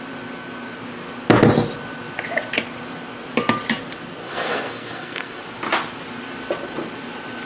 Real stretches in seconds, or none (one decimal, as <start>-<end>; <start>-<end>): 0.0-4.2; 5.4-7.5